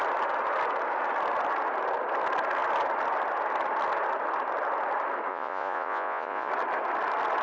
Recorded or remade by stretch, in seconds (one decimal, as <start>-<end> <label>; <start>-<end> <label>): 0.0-5.3 recorded; 5.3-6.5 remade; 6.5-7.4 recorded

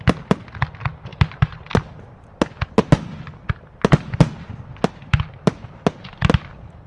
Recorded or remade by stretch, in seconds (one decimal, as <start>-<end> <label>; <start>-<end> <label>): 0.0-6.9 recorded

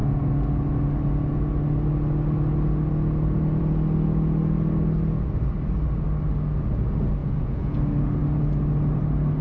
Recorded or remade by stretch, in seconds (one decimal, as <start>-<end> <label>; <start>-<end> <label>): 0.0-7.2 recorded; 7.2-7.8 remade; 7.8-9.4 recorded

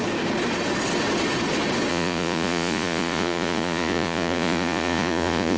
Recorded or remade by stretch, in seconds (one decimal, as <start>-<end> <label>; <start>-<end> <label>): 0.0-1.9 recorded; 1.9-5.6 remade

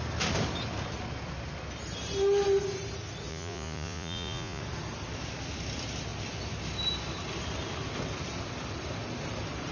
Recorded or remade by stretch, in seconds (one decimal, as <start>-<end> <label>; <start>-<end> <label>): 0.0-3.3 recorded; 3.3-4.6 remade; 4.6-9.7 recorded